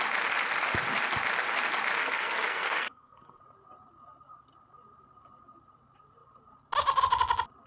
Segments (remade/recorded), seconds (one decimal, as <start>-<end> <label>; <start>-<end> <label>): 0.0-2.0 recorded; 2.0-3.4 remade; 3.4-7.7 recorded